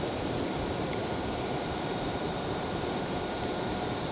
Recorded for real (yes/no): no